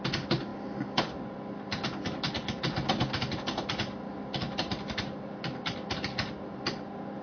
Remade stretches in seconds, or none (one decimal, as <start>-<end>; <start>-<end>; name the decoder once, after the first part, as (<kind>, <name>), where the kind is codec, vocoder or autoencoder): none